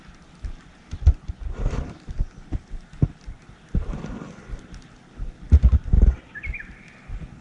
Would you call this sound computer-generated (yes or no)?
no